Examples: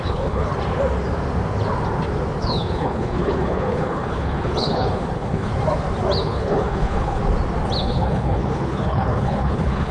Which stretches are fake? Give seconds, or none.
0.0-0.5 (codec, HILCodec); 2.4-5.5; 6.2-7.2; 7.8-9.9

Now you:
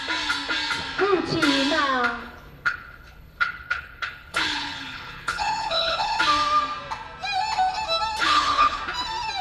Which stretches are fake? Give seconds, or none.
2.2-6.2 (codec, HILCodec); 8.2-8.8

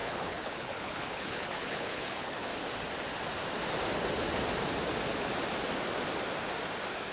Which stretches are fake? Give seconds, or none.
0.0-2.5 (codec, HILCodec)

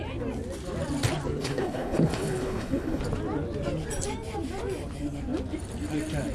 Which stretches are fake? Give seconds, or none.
1.4-3.0 (codec, HILCodec)